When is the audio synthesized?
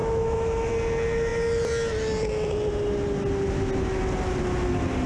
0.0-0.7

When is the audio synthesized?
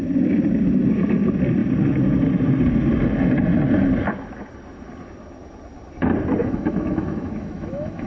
6.4-8.1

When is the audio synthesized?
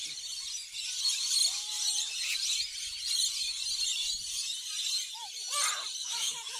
6.0-6.6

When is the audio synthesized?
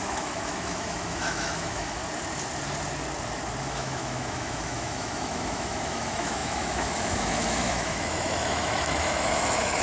0.0-2.0; 3.6-9.8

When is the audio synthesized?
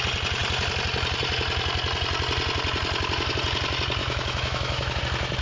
4.0-5.0